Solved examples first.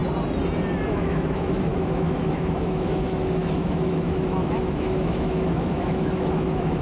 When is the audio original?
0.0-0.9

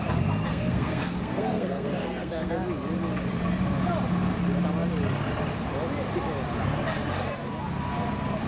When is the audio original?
0.0-0.5; 2.5-8.5

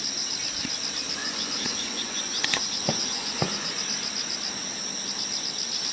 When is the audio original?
0.0-1.2; 3.8-5.9

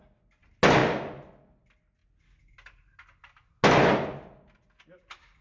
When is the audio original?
0.0-5.4

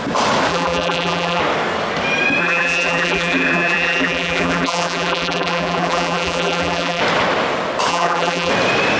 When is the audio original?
0.0-0.5; 1.4-2.4; 7.0-7.9; 8.5-9.0

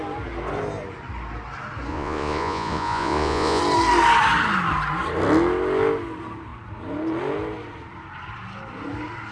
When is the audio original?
0.0-1.9; 3.6-9.3

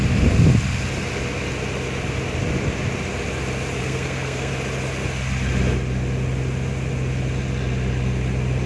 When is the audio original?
0.0-3.8; 4.5-8.7